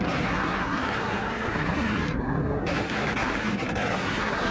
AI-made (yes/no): yes